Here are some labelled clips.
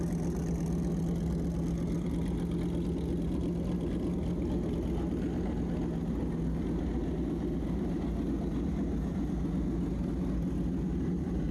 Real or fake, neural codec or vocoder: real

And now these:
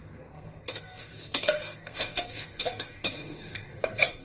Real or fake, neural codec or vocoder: fake, codec, SNAC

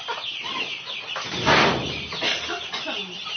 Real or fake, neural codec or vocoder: real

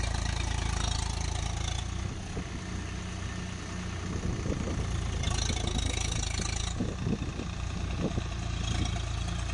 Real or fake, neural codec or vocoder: real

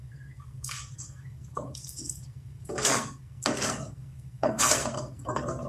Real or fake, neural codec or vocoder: fake, codec, SNAC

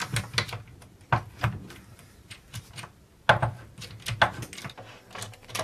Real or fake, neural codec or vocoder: real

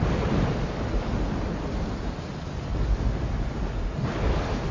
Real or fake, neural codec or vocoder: real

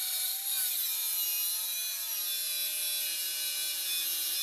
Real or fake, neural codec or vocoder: real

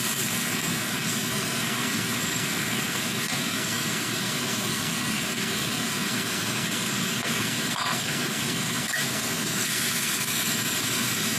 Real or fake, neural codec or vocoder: fake, codec, SNAC